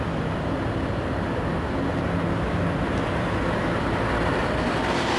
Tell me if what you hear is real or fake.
real